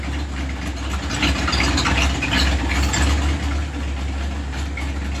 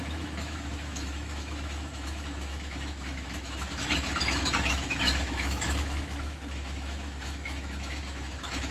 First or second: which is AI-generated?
second